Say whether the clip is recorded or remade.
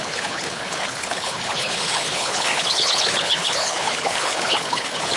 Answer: remade